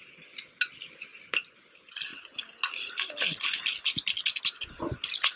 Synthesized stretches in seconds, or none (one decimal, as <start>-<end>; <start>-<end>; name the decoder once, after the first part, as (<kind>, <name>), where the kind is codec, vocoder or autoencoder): none